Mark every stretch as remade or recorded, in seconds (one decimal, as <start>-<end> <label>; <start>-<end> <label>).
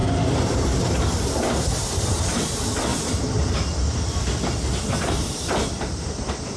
0.0-6.6 recorded